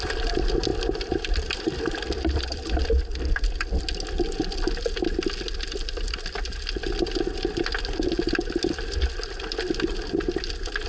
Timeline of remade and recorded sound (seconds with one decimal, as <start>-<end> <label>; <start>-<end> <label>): 0.0-0.7 recorded; 0.7-2.8 remade; 2.8-10.9 recorded